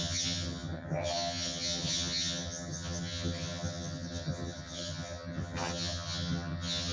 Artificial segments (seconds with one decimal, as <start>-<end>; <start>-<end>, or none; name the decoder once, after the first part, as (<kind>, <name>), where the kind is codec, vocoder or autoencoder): 0.0-6.9 (vocoder, HiFi-GAN)